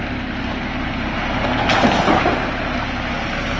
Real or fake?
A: real